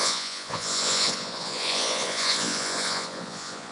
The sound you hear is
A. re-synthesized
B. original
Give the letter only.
A